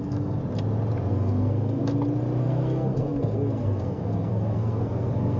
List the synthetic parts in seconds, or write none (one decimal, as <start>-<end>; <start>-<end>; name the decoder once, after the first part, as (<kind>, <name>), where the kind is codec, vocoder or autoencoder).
0.0-0.4 (codec, SNAC); 1.1-1.8; 2.4-5.4